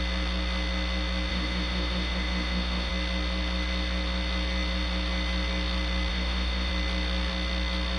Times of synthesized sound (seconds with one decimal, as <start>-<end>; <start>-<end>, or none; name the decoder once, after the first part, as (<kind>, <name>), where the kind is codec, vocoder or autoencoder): 1.3-2.9 (autoencoder, DAC-VAE); 6.1-6.7